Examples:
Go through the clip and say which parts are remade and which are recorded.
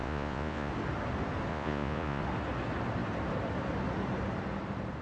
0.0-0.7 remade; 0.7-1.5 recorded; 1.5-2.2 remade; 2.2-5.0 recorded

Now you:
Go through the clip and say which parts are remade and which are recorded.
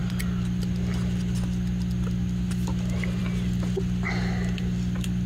0.0-5.3 recorded